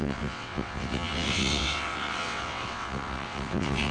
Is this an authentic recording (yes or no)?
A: no